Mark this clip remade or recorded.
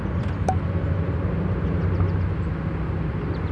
recorded